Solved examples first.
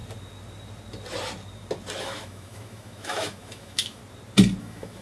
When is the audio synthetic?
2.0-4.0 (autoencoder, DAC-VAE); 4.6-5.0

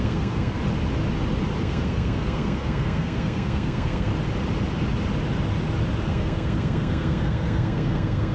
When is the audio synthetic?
0.0-0.6 (codec, SNAC); 1.6-4.1; 6.1-8.3

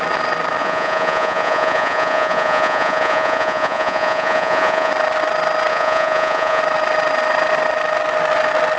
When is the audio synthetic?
0.6-4.9 (vocoder, Vocos); 5.7-6.6

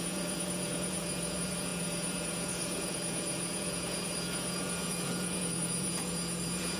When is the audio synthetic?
0.0-6.8 (vocoder, Vocos)

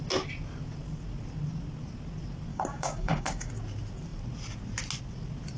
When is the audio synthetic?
2.5-3.5 (codec, DAC)

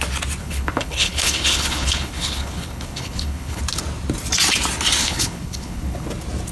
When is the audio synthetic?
0.4-3.6 (codec, HILCodec); 5.0-6.1

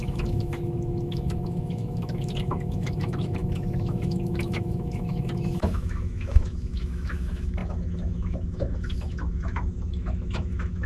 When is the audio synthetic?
0.0-10.9 (autoencoder, DAC-VAE)

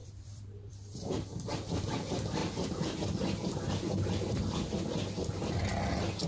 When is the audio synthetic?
0.0-0.7 (vocoder, BigVGAN v2); 2.4-4.1